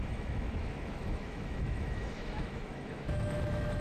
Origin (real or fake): fake